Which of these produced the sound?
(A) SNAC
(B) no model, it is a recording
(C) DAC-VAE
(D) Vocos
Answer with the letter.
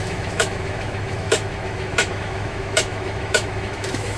C